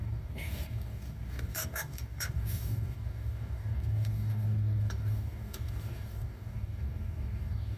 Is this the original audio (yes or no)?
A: no